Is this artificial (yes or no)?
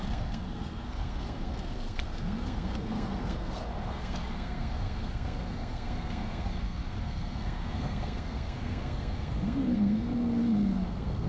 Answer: yes